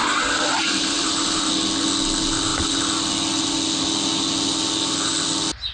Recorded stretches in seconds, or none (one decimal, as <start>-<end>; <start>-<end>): 1.5-5.7